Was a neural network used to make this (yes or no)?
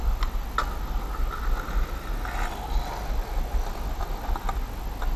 no